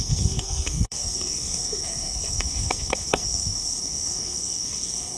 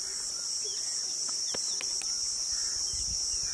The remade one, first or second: first